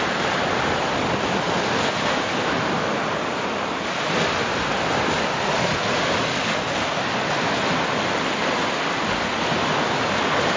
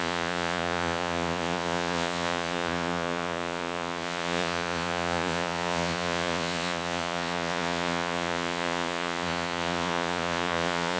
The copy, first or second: second